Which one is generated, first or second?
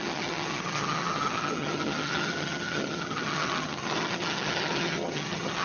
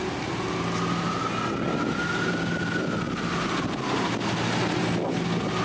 first